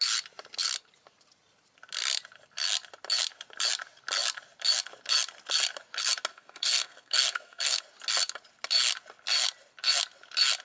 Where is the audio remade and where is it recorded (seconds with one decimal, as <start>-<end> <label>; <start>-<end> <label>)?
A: 0.0-6.3 recorded; 6.3-7.8 remade; 7.8-10.6 recorded